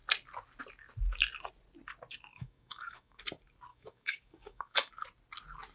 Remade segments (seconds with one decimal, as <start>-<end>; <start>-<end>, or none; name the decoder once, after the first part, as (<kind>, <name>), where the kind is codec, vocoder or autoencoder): 2.3-3.2 (codec, DAC); 3.7-4.9